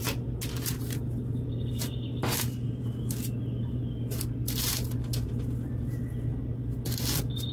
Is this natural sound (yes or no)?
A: yes